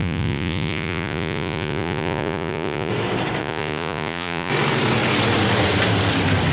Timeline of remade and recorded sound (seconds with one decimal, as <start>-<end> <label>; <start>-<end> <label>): 0.0-2.9 remade; 2.9-3.4 recorded; 3.4-4.5 remade; 4.5-6.5 recorded